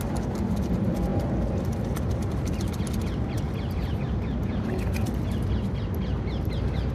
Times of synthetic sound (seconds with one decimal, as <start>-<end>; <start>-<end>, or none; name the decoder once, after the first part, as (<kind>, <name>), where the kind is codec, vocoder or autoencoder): none

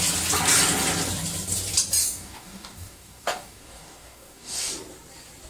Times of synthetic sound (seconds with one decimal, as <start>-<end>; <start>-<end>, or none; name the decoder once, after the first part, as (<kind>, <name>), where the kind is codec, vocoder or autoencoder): 2.0-4.7 (codec, DAC)

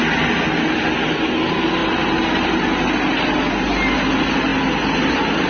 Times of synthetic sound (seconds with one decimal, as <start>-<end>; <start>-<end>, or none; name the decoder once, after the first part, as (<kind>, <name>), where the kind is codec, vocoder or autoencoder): none

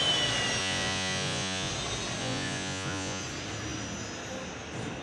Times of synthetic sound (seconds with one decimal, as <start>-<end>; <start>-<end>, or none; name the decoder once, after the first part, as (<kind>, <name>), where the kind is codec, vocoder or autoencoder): 0.6-1.7 (vocoder, Vocos); 2.2-3.2

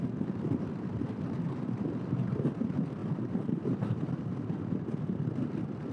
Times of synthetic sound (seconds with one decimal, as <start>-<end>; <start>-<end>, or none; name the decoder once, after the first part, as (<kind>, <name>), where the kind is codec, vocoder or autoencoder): 3.0-4.2 (vocoder, BigVGAN v2)

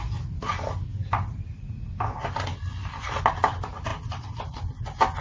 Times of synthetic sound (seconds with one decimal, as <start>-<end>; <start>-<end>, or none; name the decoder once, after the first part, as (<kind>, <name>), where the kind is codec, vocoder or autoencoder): none

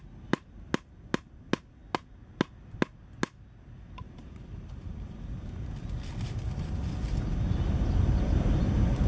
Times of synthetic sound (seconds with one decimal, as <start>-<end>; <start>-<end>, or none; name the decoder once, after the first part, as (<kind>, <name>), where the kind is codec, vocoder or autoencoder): none